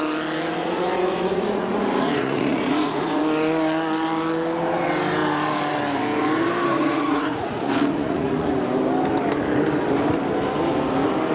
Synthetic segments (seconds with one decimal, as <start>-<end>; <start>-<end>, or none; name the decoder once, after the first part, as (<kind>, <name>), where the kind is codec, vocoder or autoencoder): 0.6-3.2 (vocoder, Vocos); 6.7-8.5